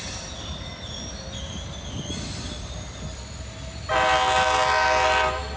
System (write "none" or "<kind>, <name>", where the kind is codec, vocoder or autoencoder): none